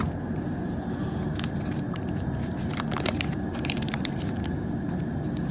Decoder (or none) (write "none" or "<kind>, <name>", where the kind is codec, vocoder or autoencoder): vocoder, BigVGAN v2